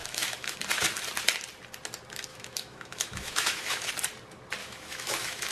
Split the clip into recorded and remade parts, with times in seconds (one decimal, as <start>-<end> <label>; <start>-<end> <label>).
0.0-0.6 remade; 0.6-2.3 recorded; 2.3-3.9 remade; 3.9-4.6 recorded; 4.6-5.5 remade